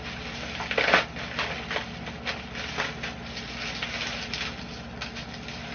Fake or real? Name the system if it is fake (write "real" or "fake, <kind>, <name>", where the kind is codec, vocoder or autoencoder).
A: real